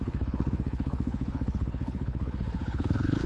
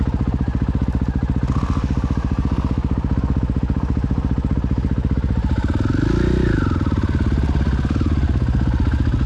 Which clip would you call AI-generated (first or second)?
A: first